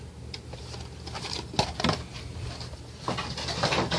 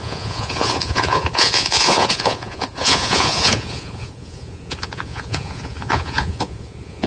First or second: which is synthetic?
second